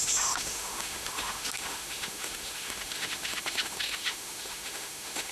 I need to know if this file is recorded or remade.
remade